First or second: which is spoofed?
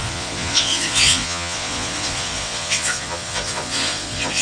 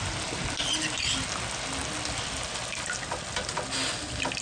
first